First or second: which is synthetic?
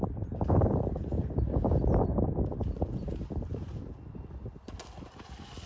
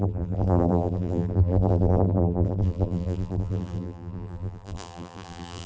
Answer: second